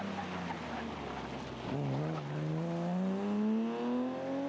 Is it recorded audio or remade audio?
recorded